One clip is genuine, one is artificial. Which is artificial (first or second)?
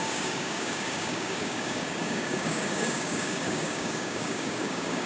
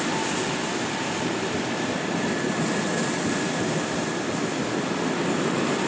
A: first